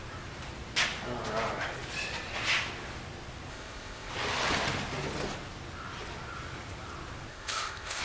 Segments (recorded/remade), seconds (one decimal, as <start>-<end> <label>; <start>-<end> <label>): 0.0-3.5 recorded; 3.5-4.1 remade; 4.1-7.3 recorded; 7.3-8.0 remade